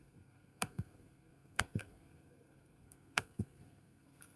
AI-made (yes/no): yes